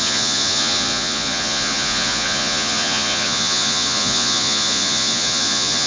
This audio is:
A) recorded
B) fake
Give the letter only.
B